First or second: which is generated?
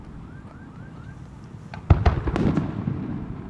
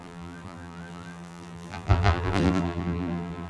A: second